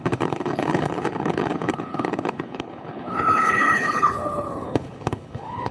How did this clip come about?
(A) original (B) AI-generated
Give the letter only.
B